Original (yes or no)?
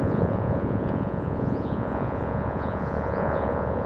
no